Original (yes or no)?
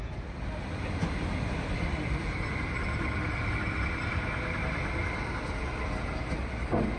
yes